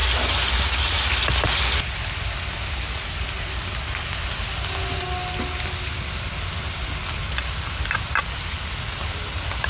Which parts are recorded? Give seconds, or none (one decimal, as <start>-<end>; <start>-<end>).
0.0-9.7